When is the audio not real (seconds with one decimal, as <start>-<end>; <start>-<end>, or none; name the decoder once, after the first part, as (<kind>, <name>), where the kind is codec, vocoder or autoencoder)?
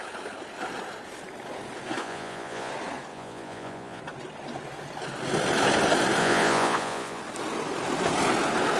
2.0-2.7 (vocoder, Vocos); 3.1-4.0; 6.2-7.2